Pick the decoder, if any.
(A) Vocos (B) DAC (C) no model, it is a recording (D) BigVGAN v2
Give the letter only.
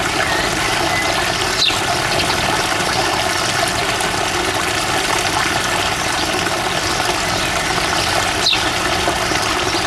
C